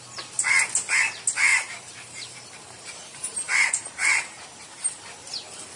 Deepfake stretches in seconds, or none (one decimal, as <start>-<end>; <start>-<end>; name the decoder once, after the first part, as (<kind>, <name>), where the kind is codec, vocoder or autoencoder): 1.5-5.0 (vocoder, BigVGAN v2)